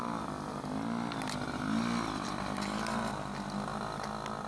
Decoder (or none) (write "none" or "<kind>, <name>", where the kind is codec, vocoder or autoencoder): none